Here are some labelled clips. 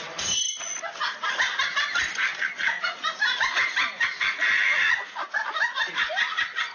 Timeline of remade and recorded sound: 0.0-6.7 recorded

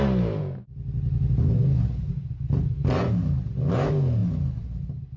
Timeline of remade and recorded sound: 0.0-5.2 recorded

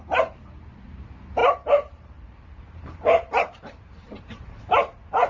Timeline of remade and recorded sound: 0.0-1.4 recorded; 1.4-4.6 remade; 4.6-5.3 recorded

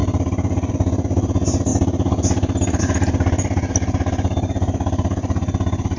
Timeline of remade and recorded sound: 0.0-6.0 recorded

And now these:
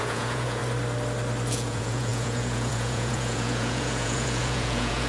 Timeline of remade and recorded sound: 0.0-0.6 remade; 0.6-1.5 recorded; 1.5-5.1 remade

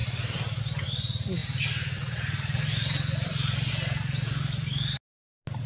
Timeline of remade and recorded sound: 0.0-0.6 remade; 0.6-1.4 recorded; 1.4-3.7 remade; 3.7-5.7 recorded

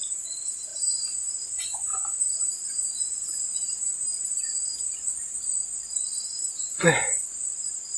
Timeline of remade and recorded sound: 0.0-0.7 recorded; 0.7-5.4 remade; 5.4-8.0 recorded

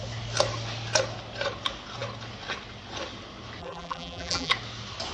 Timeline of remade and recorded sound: 0.0-3.6 recorded; 3.6-4.5 remade; 4.5-5.1 recorded